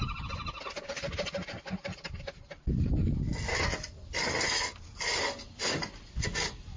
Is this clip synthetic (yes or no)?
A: no